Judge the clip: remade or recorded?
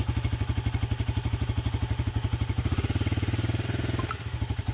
recorded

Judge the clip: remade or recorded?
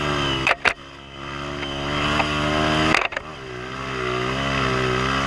recorded